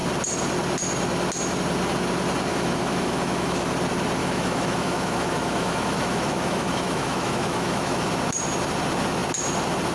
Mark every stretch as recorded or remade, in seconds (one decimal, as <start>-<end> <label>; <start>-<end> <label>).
0.0-2.5 recorded; 2.5-3.7 remade; 3.7-4.2 recorded; 4.2-8.1 remade; 8.1-9.9 recorded